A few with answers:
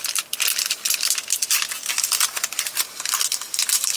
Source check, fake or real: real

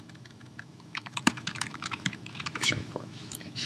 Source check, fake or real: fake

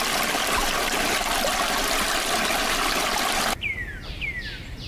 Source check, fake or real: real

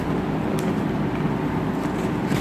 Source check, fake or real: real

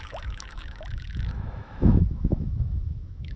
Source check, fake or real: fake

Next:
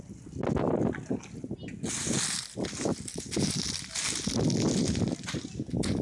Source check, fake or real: real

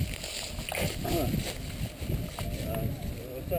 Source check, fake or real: real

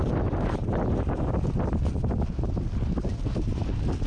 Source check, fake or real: real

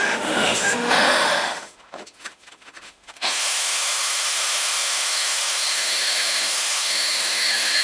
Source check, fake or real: fake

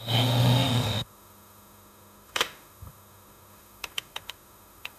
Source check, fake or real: fake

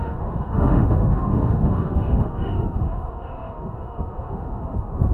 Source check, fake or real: fake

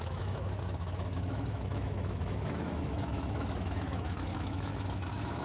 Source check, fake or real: fake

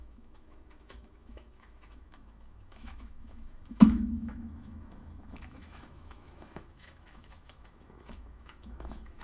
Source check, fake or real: fake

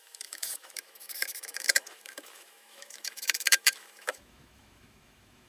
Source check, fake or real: fake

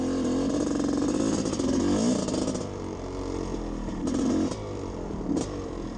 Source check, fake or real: real